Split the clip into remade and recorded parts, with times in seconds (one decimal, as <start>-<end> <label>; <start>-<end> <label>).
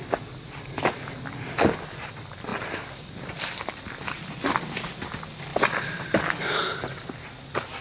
0.0-2.5 recorded; 2.5-4.8 remade; 4.8-5.5 recorded; 5.5-6.2 remade; 6.2-7.8 recorded